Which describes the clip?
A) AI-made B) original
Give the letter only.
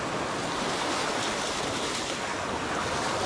B